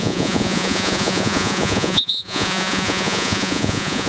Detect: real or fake fake